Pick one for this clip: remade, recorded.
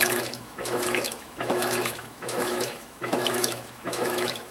remade